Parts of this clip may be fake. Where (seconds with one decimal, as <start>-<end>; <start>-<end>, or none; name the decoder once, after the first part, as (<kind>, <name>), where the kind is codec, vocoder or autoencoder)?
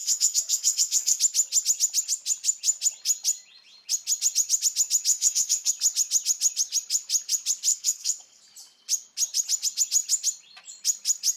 0.0-1.2 (codec, SNAC); 5.1-5.7; 7.7-8.4